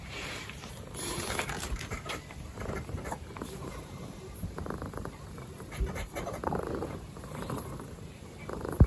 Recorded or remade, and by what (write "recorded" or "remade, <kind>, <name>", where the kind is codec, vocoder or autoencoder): remade, vocoder, BigVGAN v2